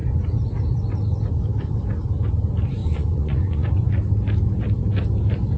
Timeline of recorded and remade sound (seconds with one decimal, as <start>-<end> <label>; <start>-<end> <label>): 0.0-2.8 recorded; 2.8-3.9 remade; 3.9-5.6 recorded